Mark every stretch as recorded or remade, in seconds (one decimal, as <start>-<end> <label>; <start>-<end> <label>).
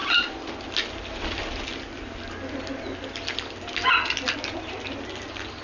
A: 0.0-5.6 recorded